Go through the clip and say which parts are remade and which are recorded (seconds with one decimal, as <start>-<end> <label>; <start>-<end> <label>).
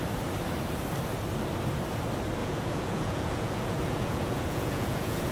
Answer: 0.0-2.4 recorded; 2.4-5.3 remade